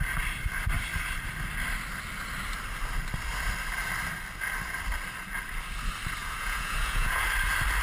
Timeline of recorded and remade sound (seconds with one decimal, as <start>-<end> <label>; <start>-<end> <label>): 0.0-6.2 recorded; 6.2-7.2 remade; 7.2-7.8 recorded